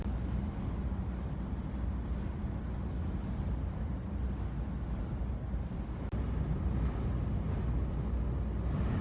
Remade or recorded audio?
recorded